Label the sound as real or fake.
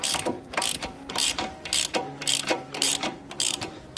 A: fake